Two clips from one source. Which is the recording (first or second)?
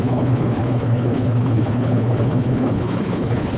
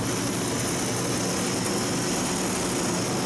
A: second